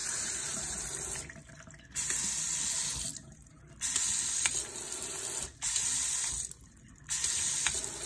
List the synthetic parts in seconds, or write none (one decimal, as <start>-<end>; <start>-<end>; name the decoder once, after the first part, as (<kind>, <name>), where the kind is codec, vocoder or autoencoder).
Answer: 0.0-0.8 (vocoder, BigVGAN v2); 3.1-3.7